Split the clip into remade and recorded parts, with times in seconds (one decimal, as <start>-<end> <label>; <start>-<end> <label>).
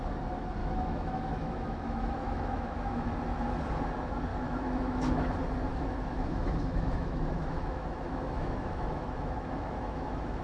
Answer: 0.0-0.6 recorded; 0.6-3.1 remade; 3.1-4.3 recorded; 4.3-5.3 remade; 5.3-5.7 recorded; 5.7-10.4 remade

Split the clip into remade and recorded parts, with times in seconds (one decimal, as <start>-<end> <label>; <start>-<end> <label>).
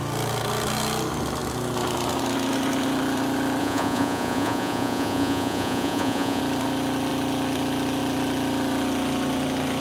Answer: 0.0-3.6 recorded; 3.6-6.4 remade; 6.4-9.8 recorded